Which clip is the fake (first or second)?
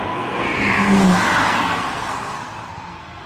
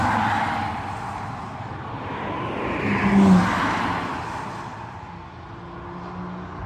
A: first